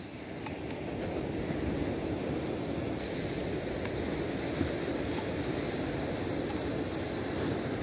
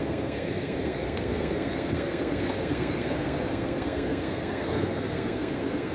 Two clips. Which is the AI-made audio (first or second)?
second